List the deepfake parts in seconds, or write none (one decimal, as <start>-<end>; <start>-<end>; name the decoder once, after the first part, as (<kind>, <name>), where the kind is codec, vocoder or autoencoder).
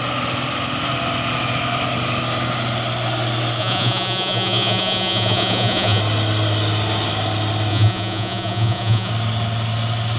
3.6-6.0 (vocoder, Vocos); 7.7-9.1